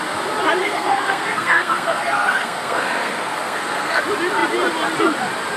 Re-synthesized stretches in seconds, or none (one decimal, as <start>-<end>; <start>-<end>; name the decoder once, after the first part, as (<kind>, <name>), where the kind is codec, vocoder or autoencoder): 0.6-4.0 (codec, SNAC)